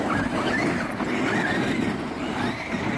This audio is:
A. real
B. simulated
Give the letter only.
A